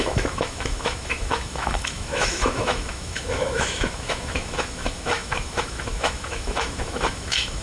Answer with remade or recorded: remade